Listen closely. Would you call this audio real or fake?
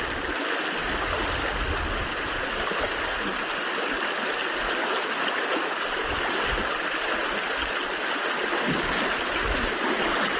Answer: real